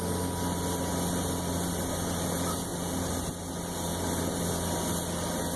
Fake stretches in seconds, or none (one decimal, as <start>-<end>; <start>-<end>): none